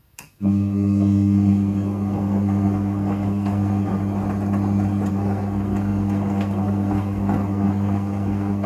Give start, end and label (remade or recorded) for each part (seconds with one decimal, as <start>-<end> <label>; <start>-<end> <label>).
0.0-3.9 remade; 3.9-5.1 recorded; 5.1-8.7 remade